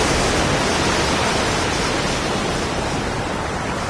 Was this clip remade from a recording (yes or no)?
no